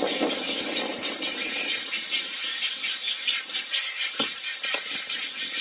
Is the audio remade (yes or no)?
no